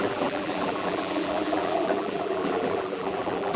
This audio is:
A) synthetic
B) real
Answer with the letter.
A